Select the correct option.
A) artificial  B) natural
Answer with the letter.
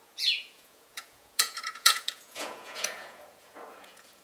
A